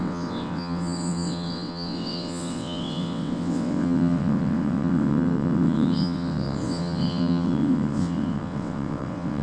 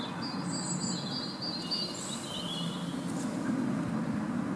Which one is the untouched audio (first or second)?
second